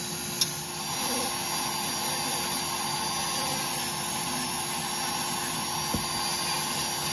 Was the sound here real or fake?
real